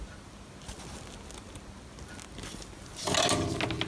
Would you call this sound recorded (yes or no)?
yes